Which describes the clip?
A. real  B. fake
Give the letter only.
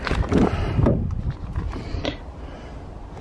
A